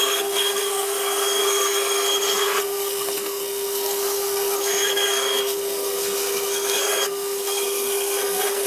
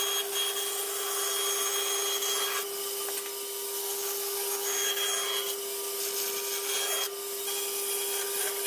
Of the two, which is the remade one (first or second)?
first